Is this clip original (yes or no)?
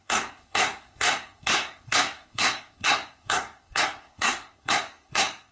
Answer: no